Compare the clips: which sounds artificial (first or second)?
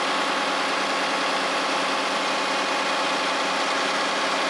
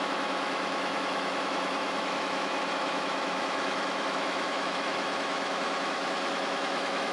second